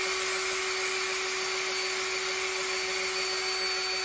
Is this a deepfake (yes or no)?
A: no